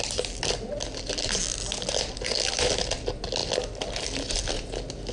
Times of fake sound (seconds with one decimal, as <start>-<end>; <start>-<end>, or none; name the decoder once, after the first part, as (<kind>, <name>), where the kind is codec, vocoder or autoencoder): 3.4-4.3 (vocoder, BigVGAN v2)